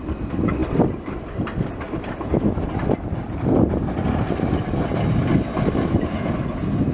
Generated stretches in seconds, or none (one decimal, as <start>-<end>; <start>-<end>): none